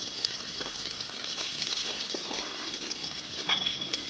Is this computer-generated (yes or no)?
yes